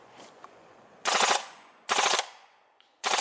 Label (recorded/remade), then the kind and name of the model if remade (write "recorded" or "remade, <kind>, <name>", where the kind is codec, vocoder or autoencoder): remade, vocoder, Vocos